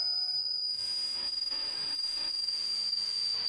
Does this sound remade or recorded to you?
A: remade